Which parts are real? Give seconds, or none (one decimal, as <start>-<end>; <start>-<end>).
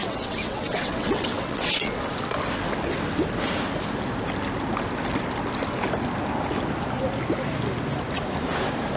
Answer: 1.9-9.0